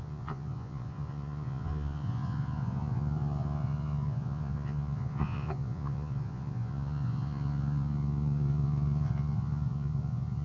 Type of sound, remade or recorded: remade